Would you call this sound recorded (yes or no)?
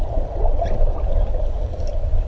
yes